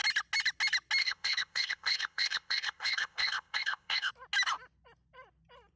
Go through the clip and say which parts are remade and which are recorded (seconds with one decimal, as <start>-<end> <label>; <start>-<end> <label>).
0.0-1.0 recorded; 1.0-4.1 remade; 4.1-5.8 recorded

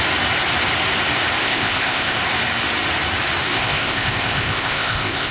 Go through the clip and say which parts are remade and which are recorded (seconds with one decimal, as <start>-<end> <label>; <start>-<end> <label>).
0.0-1.4 recorded; 1.4-2.2 remade; 2.2-3.5 recorded; 3.5-5.3 remade

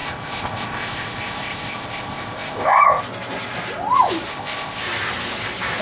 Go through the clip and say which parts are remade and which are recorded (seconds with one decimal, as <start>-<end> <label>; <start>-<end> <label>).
0.0-3.0 remade; 3.0-4.3 recorded; 4.3-4.8 remade; 4.8-5.8 recorded